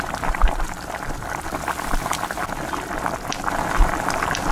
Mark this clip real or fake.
real